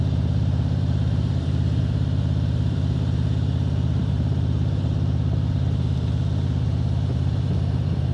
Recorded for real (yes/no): no